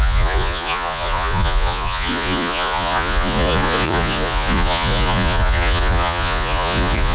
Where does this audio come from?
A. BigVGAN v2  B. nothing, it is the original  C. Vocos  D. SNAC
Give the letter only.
C